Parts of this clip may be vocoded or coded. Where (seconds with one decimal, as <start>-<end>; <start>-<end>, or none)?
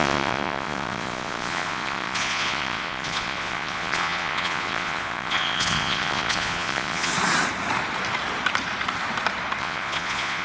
0.0-7.1; 9.6-10.4